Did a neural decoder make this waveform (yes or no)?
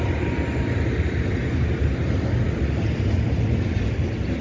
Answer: no